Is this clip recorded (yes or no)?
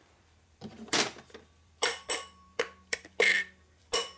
no